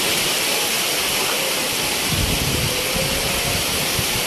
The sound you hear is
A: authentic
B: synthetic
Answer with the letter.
A